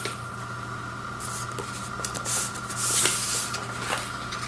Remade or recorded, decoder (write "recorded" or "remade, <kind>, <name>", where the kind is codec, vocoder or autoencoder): recorded